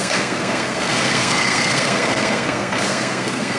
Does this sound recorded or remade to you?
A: remade